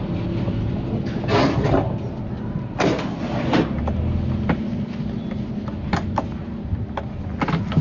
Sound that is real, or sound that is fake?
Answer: real